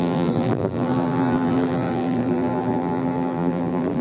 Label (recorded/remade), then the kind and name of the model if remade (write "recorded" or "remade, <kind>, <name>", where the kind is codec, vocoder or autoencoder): remade, vocoder, BigVGAN v2